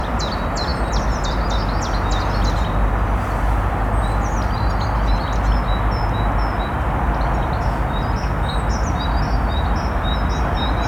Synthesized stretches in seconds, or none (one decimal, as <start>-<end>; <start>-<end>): none